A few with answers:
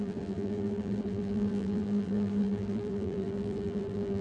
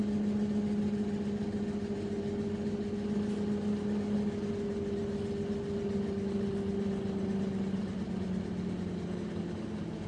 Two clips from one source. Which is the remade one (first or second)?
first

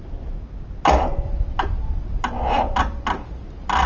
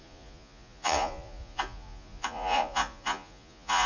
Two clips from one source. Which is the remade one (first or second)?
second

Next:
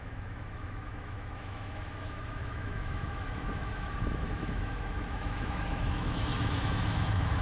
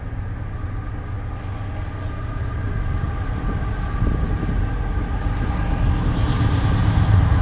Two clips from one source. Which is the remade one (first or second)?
first